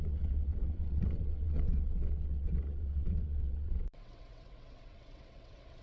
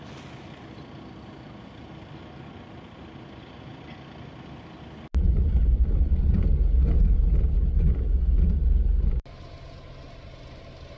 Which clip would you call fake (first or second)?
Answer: first